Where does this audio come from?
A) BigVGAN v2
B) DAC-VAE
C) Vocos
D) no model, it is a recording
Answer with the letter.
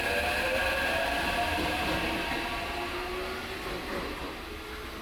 D